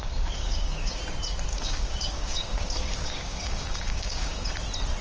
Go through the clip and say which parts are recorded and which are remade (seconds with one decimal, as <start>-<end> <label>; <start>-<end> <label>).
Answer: 0.0-1.0 remade; 1.0-1.5 recorded; 1.5-4.5 remade; 4.5-5.0 recorded